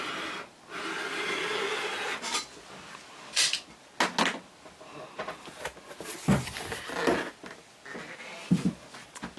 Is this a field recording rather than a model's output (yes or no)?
yes